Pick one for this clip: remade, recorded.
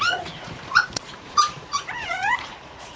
remade